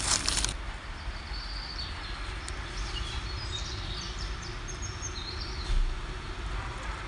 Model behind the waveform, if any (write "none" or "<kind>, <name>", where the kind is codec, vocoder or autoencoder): none